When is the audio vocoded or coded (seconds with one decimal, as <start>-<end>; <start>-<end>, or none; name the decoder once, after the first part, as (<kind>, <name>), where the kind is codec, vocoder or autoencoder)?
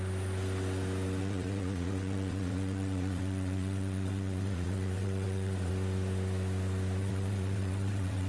1.2-5.7 (vocoder, WaveNeXt); 7.0-8.3